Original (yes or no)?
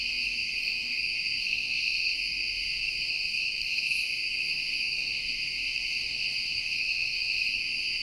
no